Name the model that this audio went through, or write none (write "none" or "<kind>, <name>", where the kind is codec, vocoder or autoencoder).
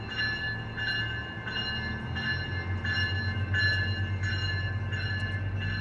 none